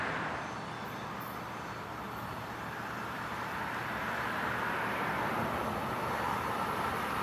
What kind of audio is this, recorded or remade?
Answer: recorded